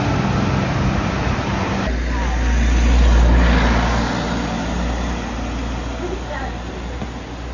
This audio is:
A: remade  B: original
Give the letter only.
B